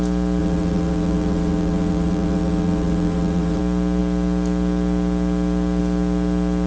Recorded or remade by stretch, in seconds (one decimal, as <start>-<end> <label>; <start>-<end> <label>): 0.0-0.4 recorded; 0.4-3.6 remade; 3.6-6.7 recorded